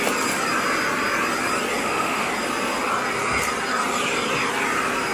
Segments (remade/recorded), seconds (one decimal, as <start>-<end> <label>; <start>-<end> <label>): 0.0-1.8 recorded; 1.8-2.3 remade; 2.3-5.1 recorded